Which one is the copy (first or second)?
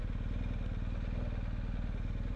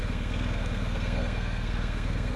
second